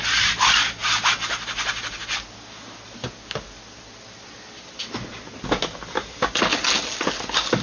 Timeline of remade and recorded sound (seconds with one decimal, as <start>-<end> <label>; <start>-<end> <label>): 0.0-7.6 recorded